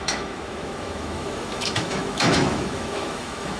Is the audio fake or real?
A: fake